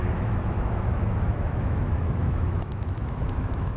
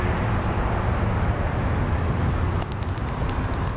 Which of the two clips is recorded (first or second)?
second